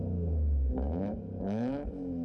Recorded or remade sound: remade